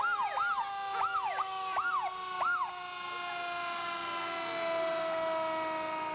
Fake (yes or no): no